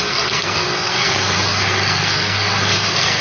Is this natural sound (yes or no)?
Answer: no